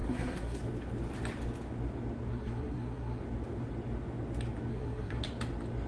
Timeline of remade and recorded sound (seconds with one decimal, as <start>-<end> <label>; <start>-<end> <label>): 0.0-0.6 remade; 0.6-2.3 recorded; 2.3-3.2 remade; 3.2-4.7 recorded; 4.7-5.2 remade; 5.2-5.9 recorded